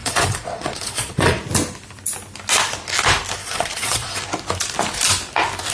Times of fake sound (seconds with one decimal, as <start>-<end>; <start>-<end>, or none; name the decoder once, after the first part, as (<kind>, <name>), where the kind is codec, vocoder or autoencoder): 0.0-1.4 (vocoder, Vocos); 3.4-4.2